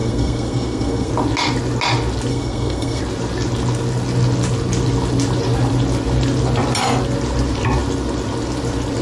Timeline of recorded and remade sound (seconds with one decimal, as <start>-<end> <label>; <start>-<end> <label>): 0.0-1.1 remade; 1.1-2.3 recorded; 2.3-3.0 remade; 3.0-9.0 recorded